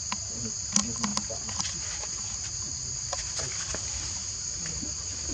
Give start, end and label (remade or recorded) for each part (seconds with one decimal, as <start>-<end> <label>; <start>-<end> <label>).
0.0-5.3 recorded